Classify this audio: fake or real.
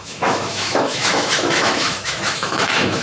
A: fake